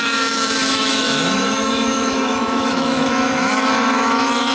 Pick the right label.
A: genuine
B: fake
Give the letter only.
B